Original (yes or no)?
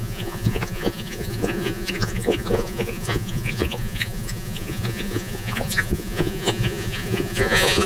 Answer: no